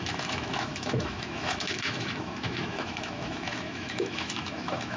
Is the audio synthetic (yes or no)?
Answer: yes